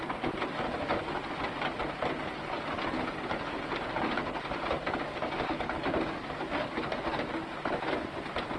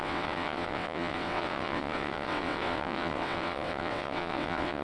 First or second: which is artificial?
second